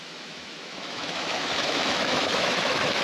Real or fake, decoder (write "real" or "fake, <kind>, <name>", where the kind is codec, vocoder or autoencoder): fake, autoencoder, DAC-VAE